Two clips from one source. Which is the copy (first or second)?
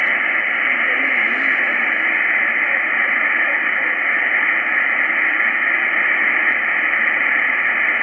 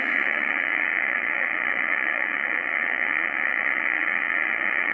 second